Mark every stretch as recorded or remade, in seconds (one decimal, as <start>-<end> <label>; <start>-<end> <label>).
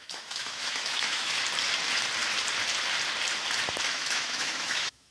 0.0-1.4 remade; 1.4-3.9 recorded; 3.9-5.1 remade